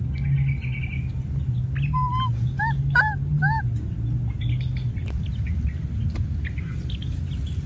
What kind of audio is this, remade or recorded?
recorded